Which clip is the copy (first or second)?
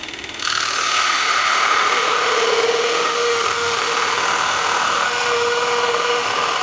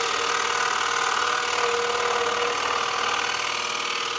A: first